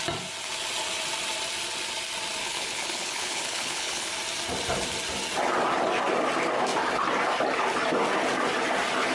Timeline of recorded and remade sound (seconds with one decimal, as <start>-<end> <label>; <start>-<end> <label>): 0.0-2.4 recorded; 2.4-4.1 remade; 4.1-9.1 recorded